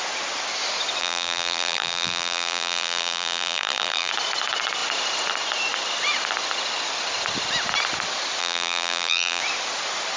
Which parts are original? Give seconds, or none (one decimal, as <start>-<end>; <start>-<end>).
0.0-1.0; 4.1-8.4; 9.4-10.2